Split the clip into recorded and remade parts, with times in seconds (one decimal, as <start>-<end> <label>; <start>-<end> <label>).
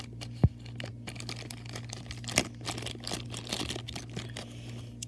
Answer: 0.0-5.1 recorded